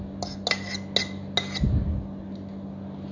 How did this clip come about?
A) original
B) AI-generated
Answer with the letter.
A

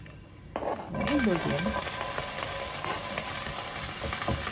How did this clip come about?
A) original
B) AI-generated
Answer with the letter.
A